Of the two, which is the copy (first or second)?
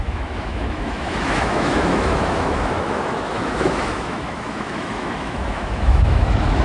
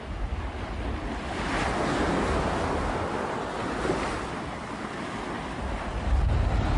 first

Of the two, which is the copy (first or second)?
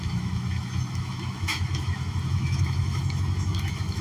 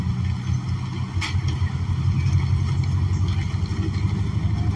first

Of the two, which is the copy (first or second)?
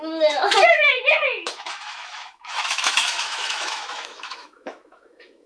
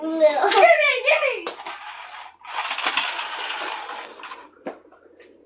first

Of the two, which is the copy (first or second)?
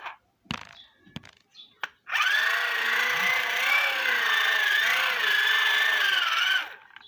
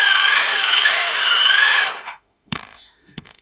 second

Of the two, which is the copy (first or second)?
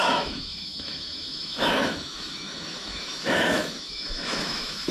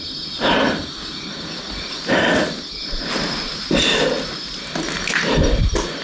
first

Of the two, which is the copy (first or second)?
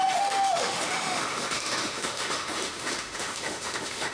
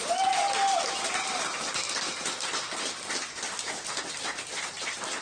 first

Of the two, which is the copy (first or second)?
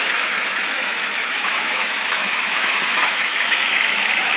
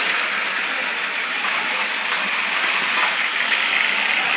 first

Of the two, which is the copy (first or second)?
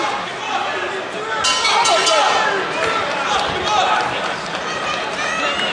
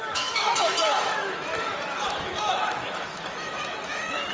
second